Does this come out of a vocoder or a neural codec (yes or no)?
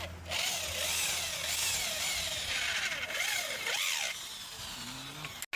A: no